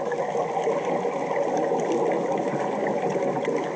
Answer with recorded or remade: recorded